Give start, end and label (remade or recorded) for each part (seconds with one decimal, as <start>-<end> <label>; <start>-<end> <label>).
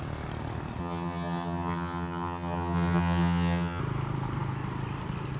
0.0-0.8 recorded; 0.8-3.8 remade; 3.8-5.4 recorded